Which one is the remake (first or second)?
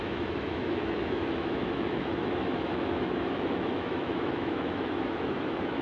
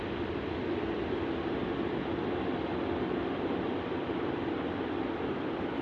first